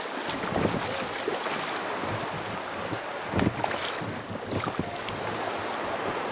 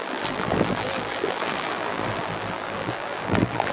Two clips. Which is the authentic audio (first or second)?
first